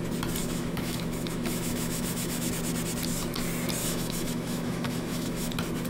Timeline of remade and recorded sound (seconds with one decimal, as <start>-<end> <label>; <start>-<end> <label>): 0.0-0.4 recorded; 0.4-2.5 remade; 2.5-3.8 recorded; 3.8-5.5 remade; 5.5-5.9 recorded

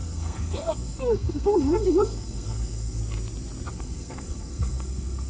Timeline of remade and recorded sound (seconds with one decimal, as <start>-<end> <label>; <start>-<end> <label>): 0.0-3.0 remade; 3.0-3.7 recorded; 3.7-5.3 remade

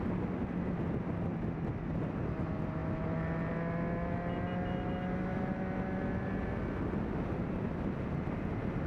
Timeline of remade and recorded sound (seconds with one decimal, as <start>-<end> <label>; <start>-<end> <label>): 0.0-8.9 recorded

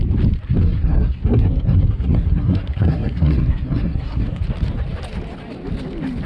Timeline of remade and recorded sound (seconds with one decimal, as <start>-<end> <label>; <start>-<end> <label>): 0.0-0.6 recorded; 0.6-4.4 remade; 4.4-6.3 recorded

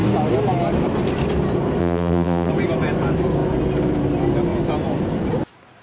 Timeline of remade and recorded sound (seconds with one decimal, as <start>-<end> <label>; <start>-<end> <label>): 0.0-1.8 recorded; 1.8-2.5 remade; 2.5-5.8 recorded

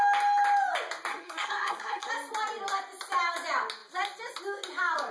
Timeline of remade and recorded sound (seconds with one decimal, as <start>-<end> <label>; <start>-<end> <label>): 0.0-1.1 recorded; 1.1-2.1 remade; 2.1-5.1 recorded